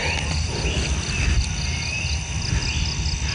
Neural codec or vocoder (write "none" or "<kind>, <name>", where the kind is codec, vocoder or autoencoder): none